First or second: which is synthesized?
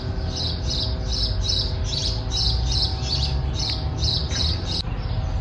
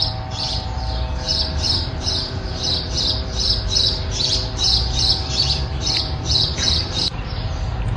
second